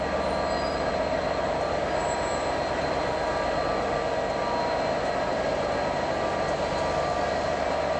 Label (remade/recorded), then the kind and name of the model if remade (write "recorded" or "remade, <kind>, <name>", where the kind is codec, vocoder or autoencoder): recorded